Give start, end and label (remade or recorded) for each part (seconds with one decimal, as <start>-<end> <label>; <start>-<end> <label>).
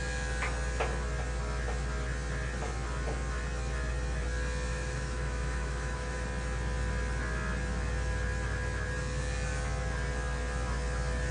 0.0-4.7 recorded; 4.7-6.2 remade; 6.2-11.3 recorded